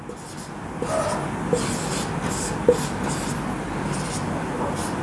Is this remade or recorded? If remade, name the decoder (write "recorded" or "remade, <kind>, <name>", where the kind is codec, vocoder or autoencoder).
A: recorded